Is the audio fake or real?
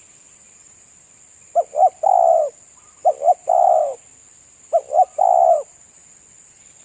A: real